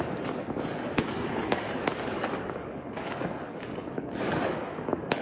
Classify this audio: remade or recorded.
remade